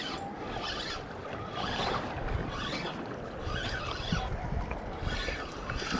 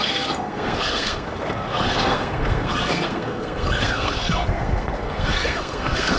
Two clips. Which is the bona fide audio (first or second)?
first